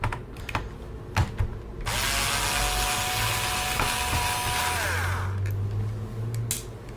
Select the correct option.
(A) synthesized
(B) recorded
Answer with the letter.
B